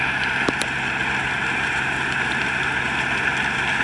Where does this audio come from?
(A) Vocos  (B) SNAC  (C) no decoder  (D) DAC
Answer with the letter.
C